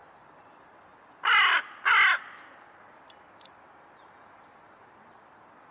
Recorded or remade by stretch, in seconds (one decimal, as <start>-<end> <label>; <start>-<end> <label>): 0.0-5.7 recorded